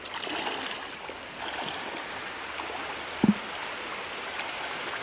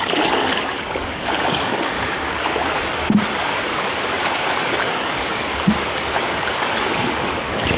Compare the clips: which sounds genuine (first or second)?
first